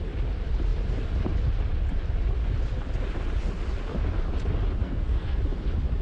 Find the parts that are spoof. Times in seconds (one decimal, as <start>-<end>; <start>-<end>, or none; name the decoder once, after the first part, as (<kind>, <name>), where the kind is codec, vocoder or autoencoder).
4.8-5.4 (codec, SNAC)